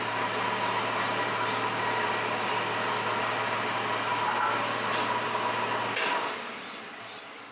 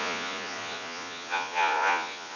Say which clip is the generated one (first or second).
second